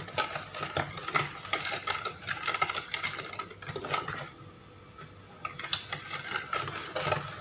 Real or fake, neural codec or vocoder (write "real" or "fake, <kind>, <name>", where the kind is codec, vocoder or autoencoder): real